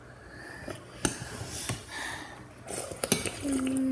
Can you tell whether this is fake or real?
real